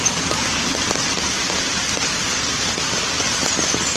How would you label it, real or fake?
real